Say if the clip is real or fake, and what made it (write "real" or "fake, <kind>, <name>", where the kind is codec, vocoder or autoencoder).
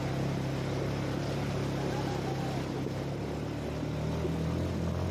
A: real